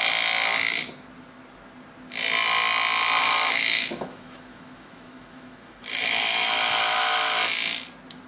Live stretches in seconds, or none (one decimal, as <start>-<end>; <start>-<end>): 0.0-3.2; 7.4-8.3